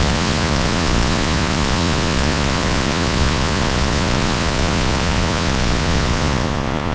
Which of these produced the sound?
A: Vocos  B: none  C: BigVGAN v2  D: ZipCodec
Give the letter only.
A